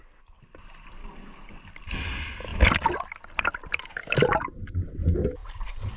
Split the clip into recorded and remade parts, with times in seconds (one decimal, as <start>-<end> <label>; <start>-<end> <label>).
0.0-1.0 recorded; 1.0-1.5 remade; 1.5-6.0 recorded